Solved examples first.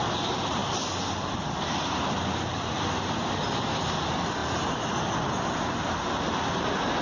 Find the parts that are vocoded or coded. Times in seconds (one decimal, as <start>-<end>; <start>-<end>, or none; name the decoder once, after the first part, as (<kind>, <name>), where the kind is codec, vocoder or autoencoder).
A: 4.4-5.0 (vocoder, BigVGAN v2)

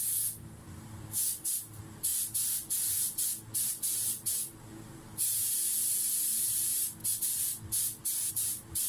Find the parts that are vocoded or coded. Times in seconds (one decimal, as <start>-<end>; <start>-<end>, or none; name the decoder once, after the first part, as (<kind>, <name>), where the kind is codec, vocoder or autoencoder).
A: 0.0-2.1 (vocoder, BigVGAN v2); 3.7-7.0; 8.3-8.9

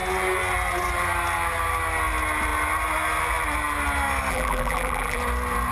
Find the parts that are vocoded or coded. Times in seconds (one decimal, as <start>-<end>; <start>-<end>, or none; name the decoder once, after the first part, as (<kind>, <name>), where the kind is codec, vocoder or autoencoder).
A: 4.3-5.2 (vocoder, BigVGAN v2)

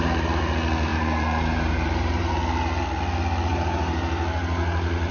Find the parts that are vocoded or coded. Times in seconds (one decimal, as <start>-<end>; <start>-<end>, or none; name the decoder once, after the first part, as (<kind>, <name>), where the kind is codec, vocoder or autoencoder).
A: 0.9-2.3 (vocoder, BigVGAN v2); 3.5-4.0

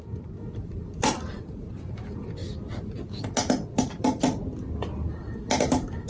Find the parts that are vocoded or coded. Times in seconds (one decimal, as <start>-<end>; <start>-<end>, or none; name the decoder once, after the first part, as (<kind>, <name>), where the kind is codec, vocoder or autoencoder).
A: 0.0-2.4 (vocoder, BigVGAN v2)

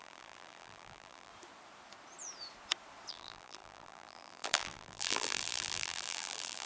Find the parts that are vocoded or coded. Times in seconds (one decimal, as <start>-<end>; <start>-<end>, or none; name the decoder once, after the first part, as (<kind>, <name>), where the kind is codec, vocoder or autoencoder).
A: 0.0-1.3 (vocoder, BigVGAN v2); 3.1-6.7

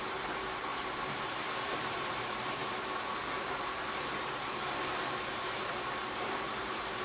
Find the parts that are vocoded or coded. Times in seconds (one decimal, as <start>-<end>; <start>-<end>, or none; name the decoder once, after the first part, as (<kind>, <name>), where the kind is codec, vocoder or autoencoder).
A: 0.0-7.0 (vocoder, BigVGAN v2)